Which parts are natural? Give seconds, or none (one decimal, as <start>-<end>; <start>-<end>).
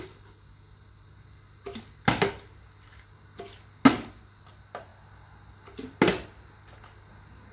0.0-7.5